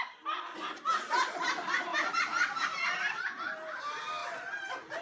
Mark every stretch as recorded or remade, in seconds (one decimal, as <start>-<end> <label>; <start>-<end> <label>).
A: 0.0-1.9 recorded; 1.9-2.9 remade; 2.9-5.0 recorded